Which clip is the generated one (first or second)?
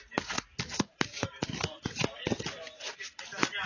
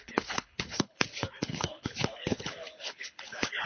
second